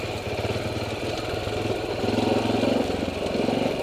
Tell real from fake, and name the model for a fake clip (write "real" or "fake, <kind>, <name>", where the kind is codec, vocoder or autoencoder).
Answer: real